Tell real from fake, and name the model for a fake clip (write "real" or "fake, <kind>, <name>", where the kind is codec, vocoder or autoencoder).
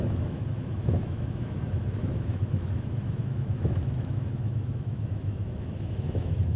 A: fake, autoencoder, DAC-VAE